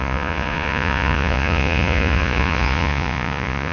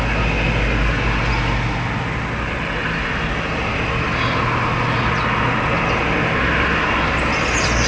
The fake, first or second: first